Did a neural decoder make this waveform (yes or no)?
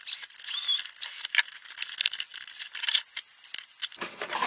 no